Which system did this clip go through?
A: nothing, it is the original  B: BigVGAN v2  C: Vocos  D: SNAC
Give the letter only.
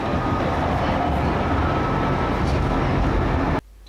A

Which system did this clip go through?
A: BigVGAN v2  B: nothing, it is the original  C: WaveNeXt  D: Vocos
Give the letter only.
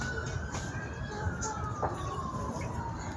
B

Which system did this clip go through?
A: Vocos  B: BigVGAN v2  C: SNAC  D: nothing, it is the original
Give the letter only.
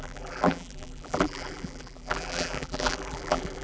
B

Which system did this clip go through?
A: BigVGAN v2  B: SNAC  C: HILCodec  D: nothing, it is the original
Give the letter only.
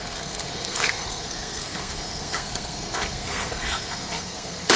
B